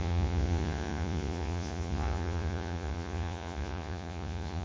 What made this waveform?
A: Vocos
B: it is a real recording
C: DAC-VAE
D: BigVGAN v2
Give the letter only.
A